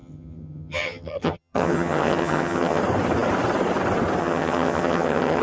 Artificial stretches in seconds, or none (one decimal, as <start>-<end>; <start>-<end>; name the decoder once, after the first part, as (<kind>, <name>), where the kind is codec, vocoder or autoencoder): 0.0-2.8 (vocoder, HiFi-GAN); 4.2-5.4